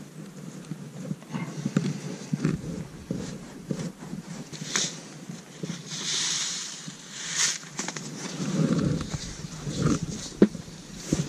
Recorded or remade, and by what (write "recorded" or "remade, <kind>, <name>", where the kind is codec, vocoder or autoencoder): remade, vocoder, BigVGAN v2